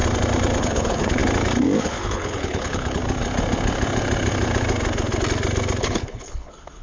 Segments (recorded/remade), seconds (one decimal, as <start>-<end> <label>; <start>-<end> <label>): 0.0-0.6 recorded; 0.6-1.2 remade; 1.2-1.8 recorded; 1.8-3.0 remade; 3.0-5.8 recorded; 5.8-6.8 remade